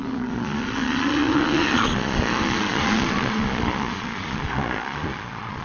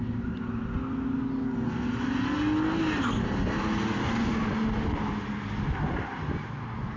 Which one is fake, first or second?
first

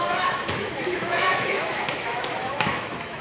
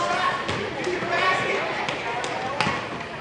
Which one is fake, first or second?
first